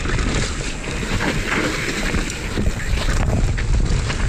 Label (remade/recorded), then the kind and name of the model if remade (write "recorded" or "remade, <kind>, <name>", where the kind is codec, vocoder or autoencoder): recorded